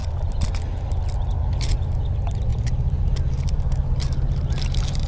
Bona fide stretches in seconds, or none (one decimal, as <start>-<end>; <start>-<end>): 0.0-2.5

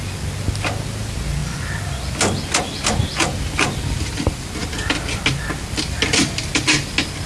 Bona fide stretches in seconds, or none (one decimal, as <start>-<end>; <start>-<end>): 0.0-7.3